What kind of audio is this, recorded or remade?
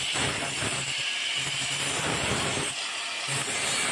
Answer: remade